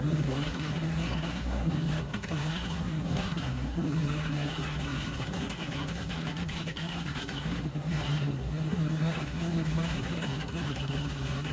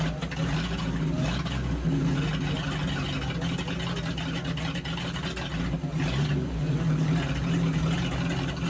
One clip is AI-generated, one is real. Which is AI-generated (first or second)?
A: first